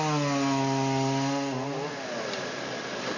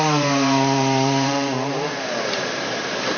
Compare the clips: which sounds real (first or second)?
first